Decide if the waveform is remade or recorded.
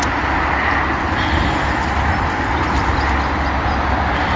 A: recorded